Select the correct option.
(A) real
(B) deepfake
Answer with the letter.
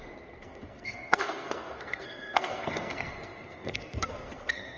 B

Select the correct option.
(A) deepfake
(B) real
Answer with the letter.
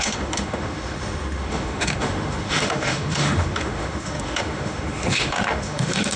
A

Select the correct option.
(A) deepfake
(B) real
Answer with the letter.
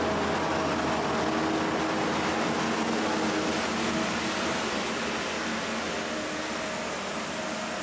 B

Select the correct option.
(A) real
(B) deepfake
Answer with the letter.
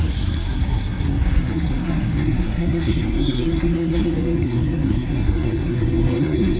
B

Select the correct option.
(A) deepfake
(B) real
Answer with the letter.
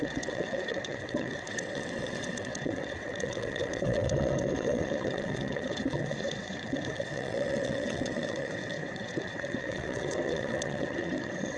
A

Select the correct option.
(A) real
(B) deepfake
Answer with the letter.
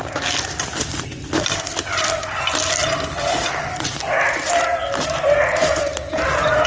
A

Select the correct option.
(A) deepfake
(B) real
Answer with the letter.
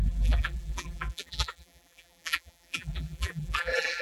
A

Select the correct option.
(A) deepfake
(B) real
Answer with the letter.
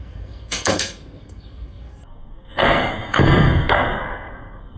A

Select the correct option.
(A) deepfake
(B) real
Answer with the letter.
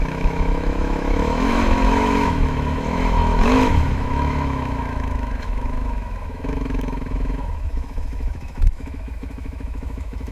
A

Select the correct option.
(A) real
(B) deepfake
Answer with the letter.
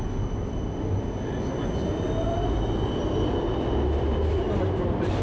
A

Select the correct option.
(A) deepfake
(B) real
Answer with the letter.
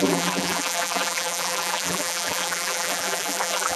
A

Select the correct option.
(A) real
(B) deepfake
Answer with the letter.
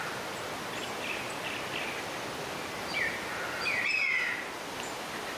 B